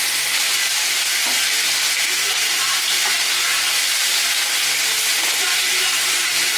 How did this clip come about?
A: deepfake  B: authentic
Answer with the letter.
B